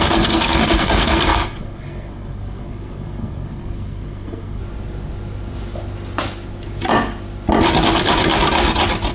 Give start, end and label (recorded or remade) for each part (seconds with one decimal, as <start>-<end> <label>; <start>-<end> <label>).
0.0-4.6 remade; 4.6-9.1 recorded